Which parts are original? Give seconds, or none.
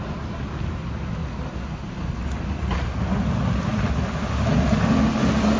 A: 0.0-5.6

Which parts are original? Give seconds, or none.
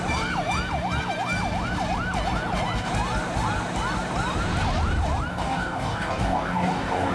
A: 0.0-5.3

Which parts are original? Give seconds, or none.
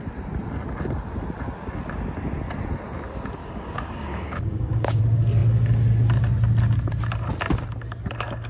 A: 0.0-3.4; 5.0-8.5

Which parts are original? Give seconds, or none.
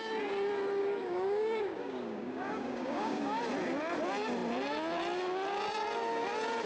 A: 0.0-0.8; 3.4-6.7